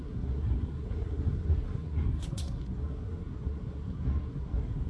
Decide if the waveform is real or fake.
fake